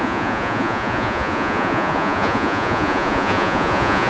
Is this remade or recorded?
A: remade